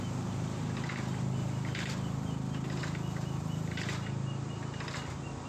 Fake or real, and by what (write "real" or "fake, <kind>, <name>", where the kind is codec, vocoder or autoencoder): real